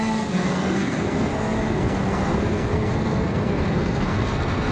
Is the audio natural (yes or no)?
no